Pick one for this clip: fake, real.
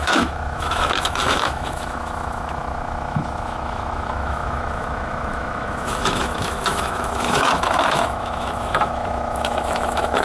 fake